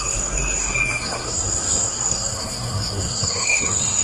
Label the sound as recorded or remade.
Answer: remade